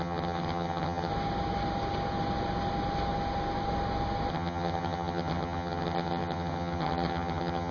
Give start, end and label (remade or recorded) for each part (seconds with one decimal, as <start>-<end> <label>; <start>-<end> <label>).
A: 0.0-1.1 remade; 1.1-4.3 recorded; 4.3-7.7 remade